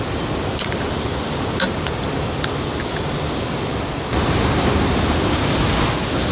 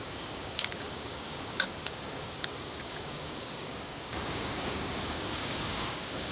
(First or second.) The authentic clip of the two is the first